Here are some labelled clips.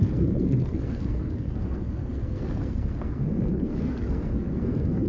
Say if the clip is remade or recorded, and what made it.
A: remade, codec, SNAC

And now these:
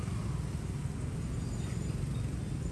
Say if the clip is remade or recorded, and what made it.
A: recorded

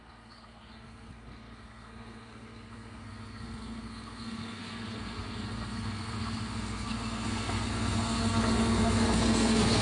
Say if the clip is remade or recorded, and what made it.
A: remade, codec, SNAC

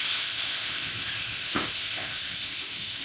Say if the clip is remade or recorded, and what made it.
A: remade, codec, ZipCodec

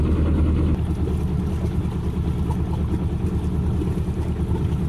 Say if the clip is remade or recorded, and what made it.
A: recorded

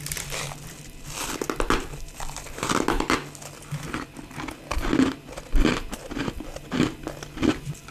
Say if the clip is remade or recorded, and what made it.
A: recorded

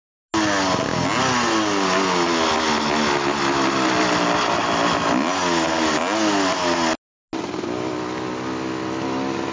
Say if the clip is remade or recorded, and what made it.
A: recorded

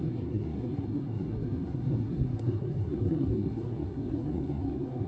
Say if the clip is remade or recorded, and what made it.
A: remade, codec, SNAC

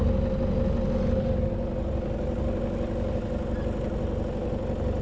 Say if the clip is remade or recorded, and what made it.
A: recorded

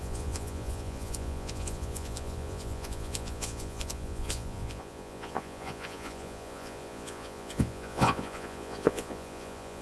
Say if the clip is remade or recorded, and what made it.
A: remade, vocoder, Vocos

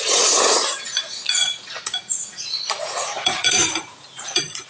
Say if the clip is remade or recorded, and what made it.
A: remade, vocoder, Vocos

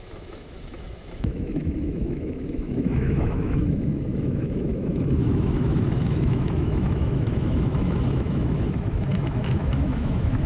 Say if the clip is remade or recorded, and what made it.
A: remade, autoencoder, DAC-VAE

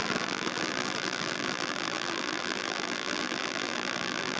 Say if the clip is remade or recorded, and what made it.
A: remade, vocoder, BigVGAN v2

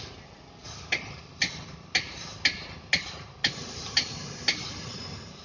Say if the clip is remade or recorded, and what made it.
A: recorded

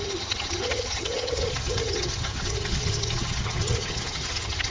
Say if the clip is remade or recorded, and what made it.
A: remade, vocoder, HiFi-GAN